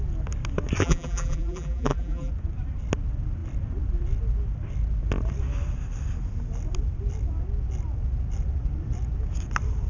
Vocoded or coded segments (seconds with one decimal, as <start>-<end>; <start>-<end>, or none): 0.8-2.3